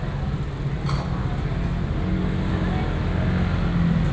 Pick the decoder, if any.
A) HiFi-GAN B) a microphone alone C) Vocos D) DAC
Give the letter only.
B